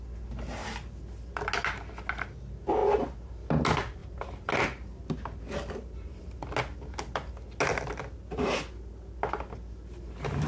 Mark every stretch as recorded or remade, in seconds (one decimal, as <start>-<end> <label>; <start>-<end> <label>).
0.0-10.5 recorded